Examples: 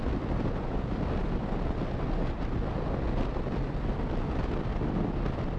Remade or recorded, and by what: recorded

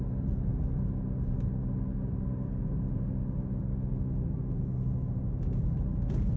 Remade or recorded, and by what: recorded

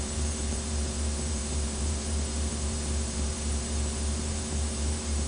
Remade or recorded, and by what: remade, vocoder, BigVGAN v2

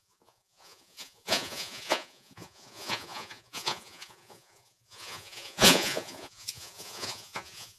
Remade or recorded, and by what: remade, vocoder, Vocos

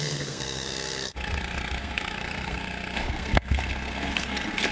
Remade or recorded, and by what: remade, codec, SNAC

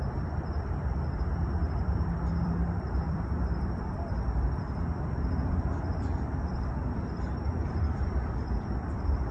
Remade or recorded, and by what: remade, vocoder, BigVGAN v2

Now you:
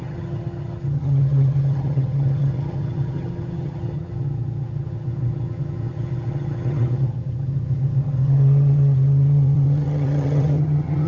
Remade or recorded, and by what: remade, vocoder, HiFi-GAN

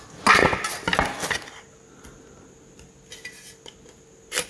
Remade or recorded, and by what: recorded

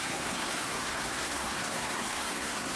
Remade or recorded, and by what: remade, codec, SNAC